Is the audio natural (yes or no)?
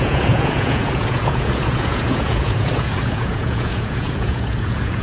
no